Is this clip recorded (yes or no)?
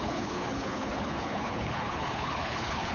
no